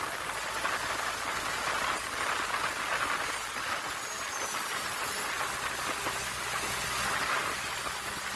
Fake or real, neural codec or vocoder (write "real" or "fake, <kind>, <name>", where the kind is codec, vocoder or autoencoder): real